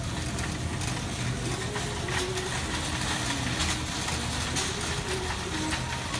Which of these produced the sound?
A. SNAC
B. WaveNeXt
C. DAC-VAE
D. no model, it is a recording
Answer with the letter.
D